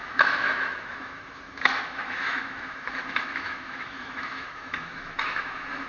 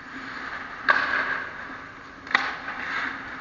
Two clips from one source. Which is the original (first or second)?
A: second